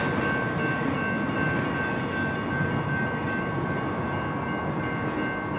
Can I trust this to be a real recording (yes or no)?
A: yes